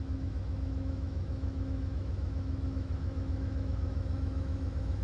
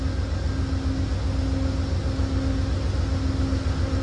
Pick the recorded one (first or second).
second